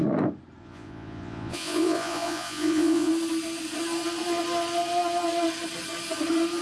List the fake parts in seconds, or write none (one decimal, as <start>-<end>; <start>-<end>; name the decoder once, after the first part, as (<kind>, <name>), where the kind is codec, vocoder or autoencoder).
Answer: 0.6-3.1 (vocoder, Vocos)